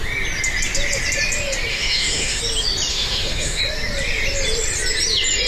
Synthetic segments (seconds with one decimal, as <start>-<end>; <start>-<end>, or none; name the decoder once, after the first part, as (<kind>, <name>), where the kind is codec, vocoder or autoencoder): 1.7-2.4 (autoencoder, DAC-VAE); 2.9-3.6